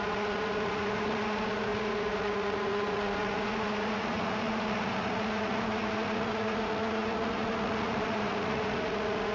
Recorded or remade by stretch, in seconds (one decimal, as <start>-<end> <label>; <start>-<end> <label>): 0.0-9.3 remade